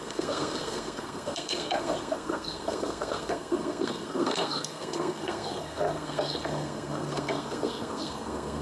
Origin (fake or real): fake